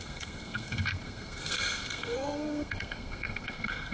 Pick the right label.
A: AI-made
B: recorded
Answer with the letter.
A